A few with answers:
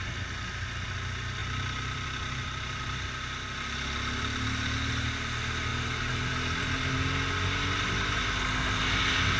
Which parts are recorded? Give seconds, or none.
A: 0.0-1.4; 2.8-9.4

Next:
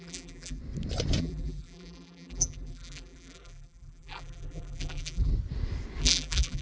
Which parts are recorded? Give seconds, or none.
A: 0.6-1.2; 5.3-6.0

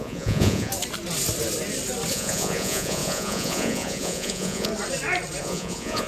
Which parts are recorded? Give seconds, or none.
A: 0.7-2.1; 4.7-5.4

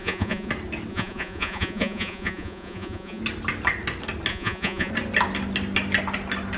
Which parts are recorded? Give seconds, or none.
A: 0.5-0.9; 3.2-4.3; 4.9-6.6